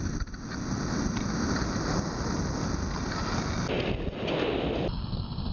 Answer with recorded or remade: recorded